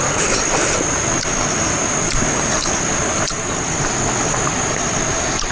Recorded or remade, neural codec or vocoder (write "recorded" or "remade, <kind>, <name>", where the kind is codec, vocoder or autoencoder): recorded